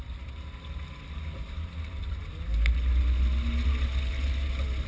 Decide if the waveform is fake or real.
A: real